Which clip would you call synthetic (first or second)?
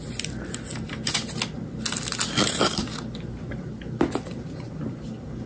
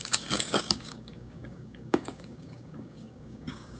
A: second